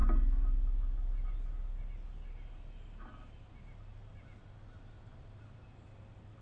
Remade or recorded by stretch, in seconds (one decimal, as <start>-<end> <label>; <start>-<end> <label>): 0.0-6.4 recorded